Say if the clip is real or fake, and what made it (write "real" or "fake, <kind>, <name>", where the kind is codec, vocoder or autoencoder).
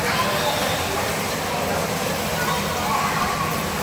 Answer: real